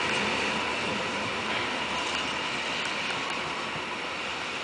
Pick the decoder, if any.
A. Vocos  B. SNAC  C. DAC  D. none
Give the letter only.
D